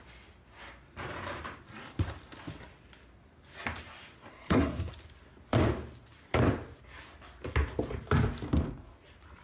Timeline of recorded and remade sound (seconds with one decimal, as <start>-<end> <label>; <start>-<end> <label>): 0.0-4.3 recorded; 4.3-4.9 remade; 4.9-9.4 recorded